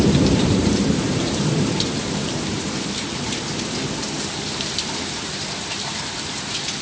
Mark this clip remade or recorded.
remade